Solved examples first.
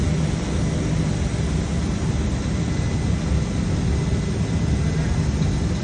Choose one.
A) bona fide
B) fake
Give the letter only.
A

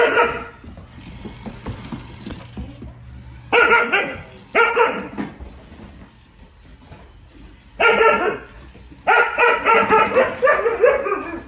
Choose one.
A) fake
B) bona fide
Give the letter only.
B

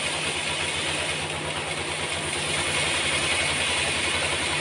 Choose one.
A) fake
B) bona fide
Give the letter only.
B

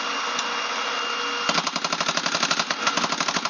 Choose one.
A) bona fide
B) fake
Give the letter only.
A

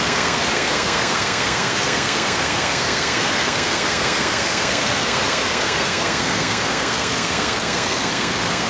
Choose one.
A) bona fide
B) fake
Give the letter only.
B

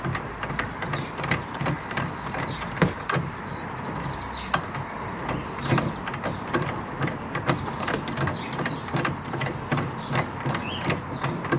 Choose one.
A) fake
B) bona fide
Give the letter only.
B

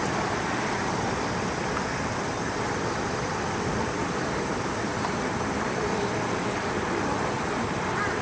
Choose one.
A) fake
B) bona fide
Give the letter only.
A